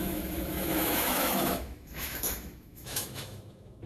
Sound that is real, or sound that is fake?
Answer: fake